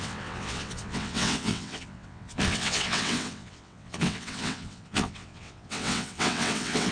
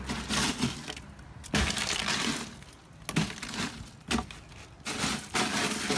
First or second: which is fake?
first